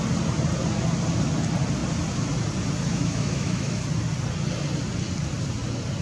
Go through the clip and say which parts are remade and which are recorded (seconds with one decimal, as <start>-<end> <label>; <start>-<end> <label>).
0.0-2.9 recorded; 2.9-3.8 remade; 3.8-6.0 recorded